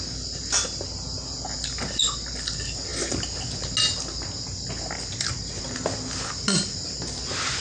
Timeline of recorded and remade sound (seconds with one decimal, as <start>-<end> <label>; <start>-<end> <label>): 0.0-7.6 recorded